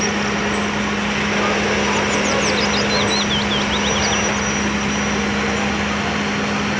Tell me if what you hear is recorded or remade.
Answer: recorded